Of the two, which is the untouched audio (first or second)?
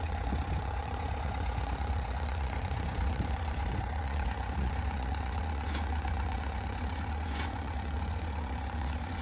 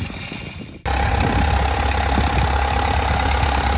second